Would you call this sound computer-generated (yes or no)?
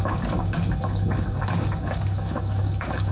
yes